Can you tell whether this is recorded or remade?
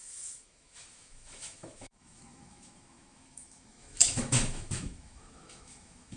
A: remade